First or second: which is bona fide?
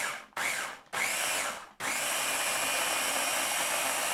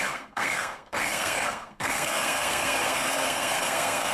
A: first